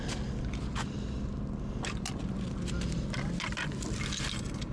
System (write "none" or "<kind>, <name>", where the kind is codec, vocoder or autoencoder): none